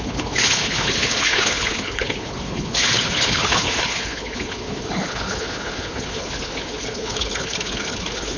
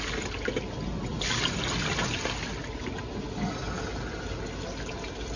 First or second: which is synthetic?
first